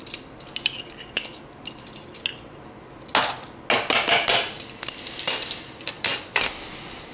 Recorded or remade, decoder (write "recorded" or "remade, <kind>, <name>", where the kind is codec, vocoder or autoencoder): recorded